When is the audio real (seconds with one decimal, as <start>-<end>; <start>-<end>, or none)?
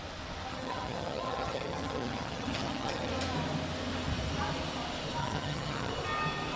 0.0-0.5; 3.1-5.2; 5.9-6.6